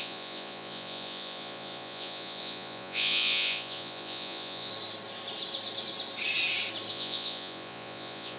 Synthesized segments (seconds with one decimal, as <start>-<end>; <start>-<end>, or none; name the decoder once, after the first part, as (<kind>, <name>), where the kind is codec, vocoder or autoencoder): 0.0-4.7 (vocoder, Vocos); 6.9-8.4